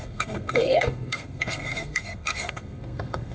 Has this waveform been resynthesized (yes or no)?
yes